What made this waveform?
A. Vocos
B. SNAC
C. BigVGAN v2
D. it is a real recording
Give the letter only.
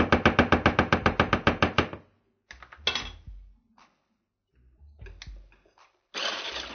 D